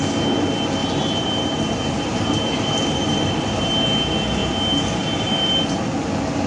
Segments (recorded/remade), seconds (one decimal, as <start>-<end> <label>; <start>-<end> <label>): 0.0-0.8 recorded; 0.8-3.7 remade; 3.7-6.5 recorded